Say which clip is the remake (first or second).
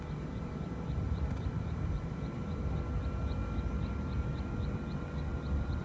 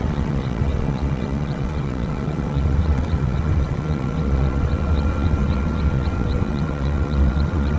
second